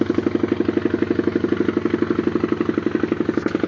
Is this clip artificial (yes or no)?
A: no